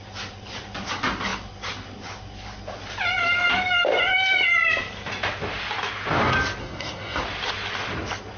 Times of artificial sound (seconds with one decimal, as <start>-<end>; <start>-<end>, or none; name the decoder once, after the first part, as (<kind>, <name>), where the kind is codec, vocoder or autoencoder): 6.6-7.2 (codec, SNAC)